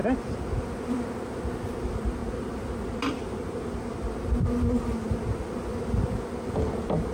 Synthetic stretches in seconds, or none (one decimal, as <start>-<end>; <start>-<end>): none